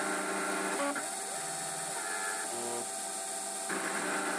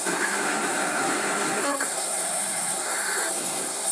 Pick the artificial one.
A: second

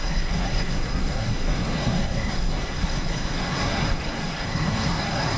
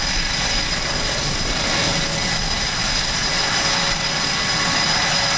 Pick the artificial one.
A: first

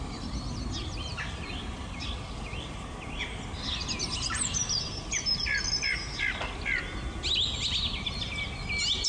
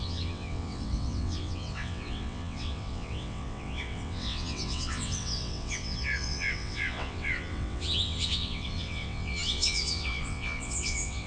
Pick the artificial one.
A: second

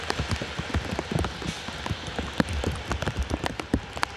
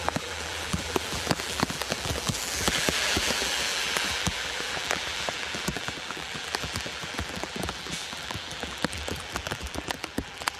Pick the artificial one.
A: second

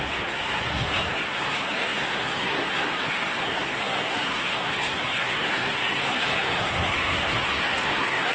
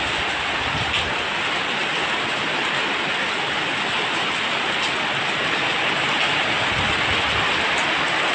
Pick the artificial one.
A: first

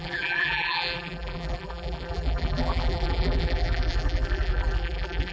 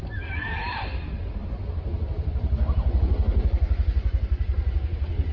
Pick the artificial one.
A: first